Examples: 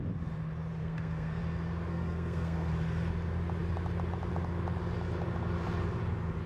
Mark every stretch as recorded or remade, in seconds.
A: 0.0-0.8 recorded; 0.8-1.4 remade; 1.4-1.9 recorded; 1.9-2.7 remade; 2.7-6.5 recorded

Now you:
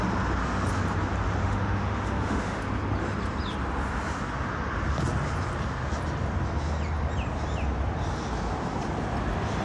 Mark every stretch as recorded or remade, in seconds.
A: 0.0-1.4 recorded; 1.4-2.6 remade; 2.6-9.6 recorded

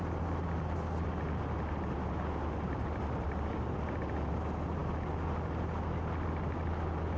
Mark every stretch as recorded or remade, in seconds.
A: 0.0-7.2 recorded

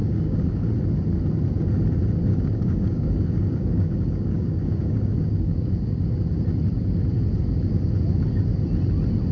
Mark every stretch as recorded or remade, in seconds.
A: 0.0-0.7 remade; 0.7-2.3 recorded; 2.3-5.7 remade; 5.7-9.3 recorded

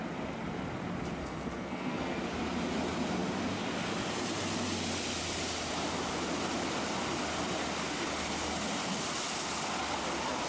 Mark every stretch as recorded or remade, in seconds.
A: 0.0-1.2 recorded; 1.2-2.2 remade; 2.2-10.5 recorded

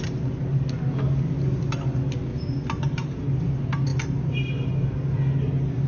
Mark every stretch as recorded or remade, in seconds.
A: 0.0-2.3 recorded; 2.3-3.3 remade; 3.3-3.9 recorded; 3.9-4.7 remade; 4.7-5.9 recorded